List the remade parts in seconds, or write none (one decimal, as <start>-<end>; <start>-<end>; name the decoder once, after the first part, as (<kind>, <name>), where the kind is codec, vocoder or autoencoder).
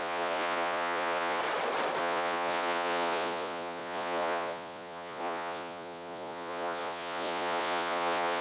0.0-1.4 (vocoder, Vocos); 2.0-8.4